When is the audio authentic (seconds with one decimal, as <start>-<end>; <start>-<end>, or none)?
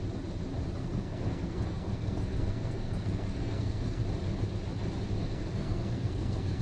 0.0-0.8; 4.0-5.2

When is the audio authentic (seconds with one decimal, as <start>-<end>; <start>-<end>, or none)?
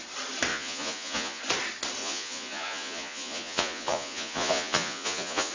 0.0-0.5; 1.4-2.0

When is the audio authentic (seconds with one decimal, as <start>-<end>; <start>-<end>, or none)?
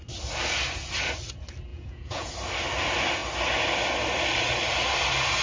0.0-1.7; 2.3-5.4